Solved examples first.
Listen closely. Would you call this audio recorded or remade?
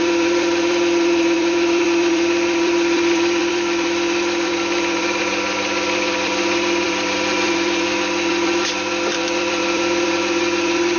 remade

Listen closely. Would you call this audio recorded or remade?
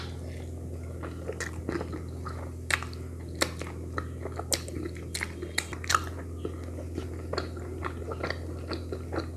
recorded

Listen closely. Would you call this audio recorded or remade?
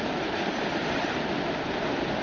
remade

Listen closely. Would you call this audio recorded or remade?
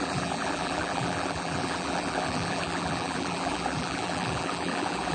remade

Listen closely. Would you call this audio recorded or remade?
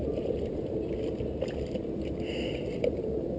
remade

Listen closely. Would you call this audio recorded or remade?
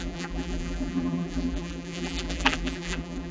remade